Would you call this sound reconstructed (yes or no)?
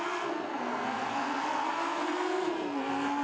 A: yes